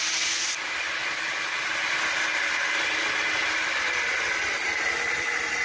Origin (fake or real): real